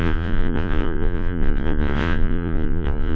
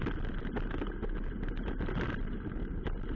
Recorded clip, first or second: second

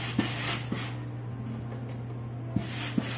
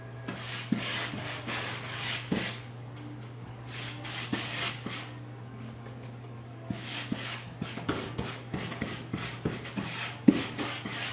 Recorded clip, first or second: first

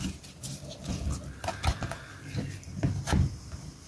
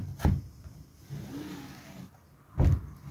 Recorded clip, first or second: second